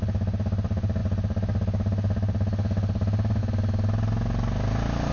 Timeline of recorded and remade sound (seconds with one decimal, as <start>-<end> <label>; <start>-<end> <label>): 0.0-5.1 recorded